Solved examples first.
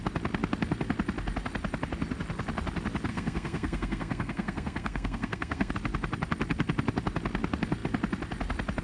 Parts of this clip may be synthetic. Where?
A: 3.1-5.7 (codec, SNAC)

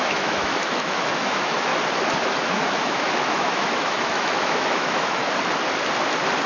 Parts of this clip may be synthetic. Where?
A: 0.0-1.7 (autoencoder, DAC-VAE); 2.5-5.2